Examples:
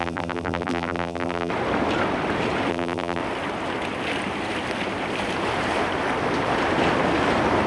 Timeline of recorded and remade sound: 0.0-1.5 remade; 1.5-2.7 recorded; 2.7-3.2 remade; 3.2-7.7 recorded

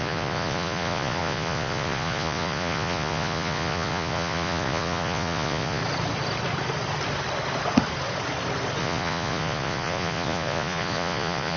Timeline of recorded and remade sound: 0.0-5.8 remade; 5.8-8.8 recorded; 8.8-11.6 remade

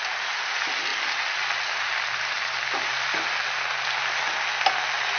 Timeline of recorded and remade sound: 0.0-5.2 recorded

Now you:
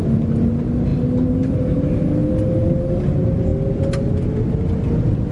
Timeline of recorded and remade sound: 0.0-5.3 recorded

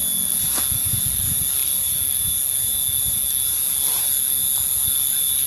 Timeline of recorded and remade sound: 0.0-5.5 recorded